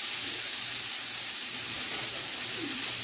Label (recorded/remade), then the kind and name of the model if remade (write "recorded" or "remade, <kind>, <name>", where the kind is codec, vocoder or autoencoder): remade, vocoder, BigVGAN v2